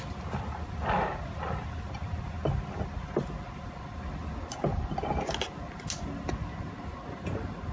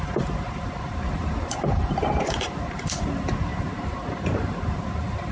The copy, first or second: second